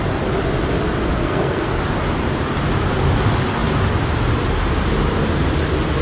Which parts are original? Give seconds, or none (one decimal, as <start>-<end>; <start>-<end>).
0.0-1.2; 1.8-6.0